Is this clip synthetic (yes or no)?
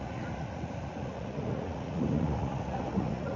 yes